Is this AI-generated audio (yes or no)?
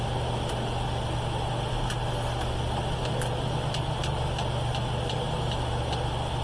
no